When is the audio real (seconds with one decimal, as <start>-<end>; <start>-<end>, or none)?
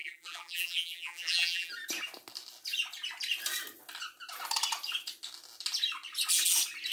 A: 1.7-6.9